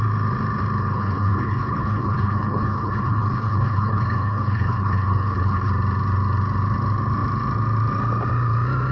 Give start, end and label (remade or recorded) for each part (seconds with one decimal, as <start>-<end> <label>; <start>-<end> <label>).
0.0-0.8 recorded; 0.8-5.7 remade; 5.7-8.9 recorded